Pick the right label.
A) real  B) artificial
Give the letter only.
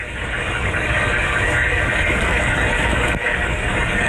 B